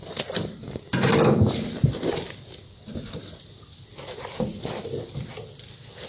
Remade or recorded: recorded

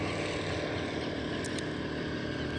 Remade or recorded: remade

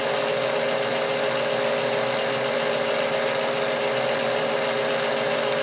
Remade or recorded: recorded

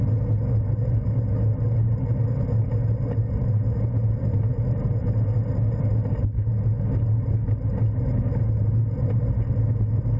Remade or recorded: recorded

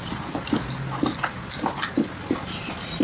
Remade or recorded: recorded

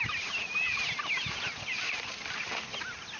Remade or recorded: recorded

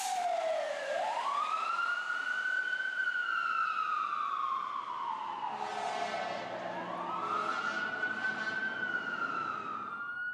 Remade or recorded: recorded